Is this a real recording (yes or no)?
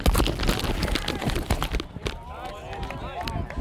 yes